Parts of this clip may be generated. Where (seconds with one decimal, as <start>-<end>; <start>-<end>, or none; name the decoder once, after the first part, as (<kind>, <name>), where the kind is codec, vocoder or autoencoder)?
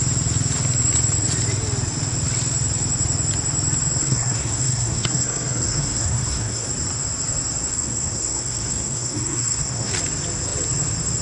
4.0-6.7 (codec, SNAC); 7.7-9.9